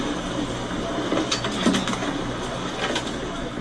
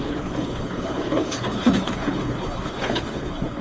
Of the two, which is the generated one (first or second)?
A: second